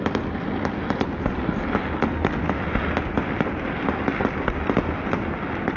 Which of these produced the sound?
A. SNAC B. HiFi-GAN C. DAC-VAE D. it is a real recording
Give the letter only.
D